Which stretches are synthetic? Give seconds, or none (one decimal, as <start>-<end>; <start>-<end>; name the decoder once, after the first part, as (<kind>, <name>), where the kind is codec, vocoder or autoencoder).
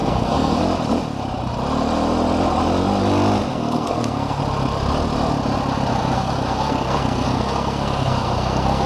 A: 0.0-0.6 (codec, SNAC); 3.5-4.4; 5.9-8.9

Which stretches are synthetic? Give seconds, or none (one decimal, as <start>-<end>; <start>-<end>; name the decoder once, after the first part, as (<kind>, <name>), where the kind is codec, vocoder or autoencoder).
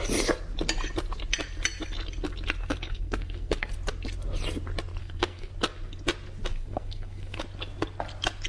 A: 2.6-3.7 (codec, SNAC); 5.0-5.5; 6.5-7.4